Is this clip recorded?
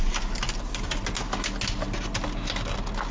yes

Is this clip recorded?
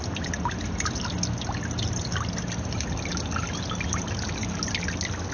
yes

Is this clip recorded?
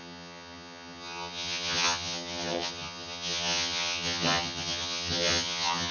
no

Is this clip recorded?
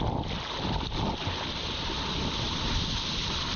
yes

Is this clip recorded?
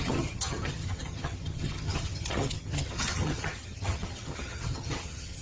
no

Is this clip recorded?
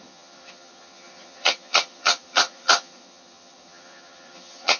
no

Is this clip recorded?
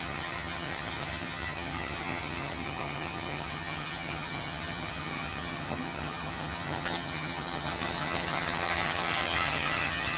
no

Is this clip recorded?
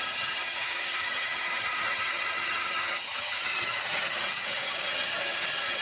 no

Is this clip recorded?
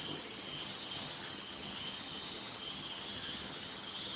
no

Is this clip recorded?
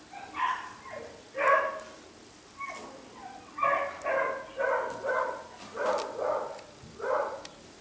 yes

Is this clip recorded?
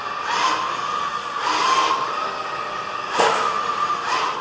yes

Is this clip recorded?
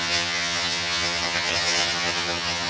no